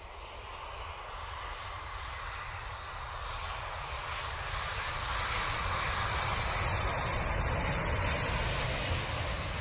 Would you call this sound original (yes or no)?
yes